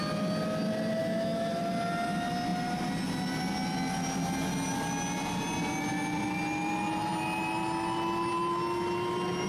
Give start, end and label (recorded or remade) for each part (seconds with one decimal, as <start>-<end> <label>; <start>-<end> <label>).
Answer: 0.0-1.0 recorded; 1.0-1.6 remade; 1.6-9.5 recorded